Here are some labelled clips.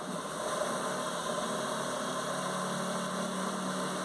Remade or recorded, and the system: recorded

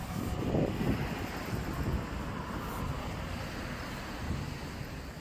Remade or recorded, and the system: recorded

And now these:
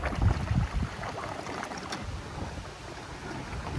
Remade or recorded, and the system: recorded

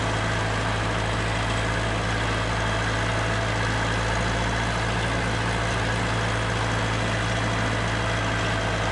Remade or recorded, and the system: recorded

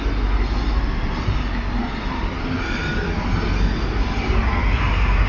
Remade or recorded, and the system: recorded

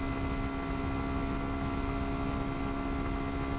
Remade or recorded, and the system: recorded